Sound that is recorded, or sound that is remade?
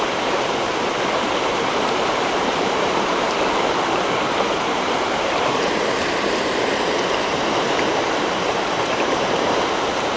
remade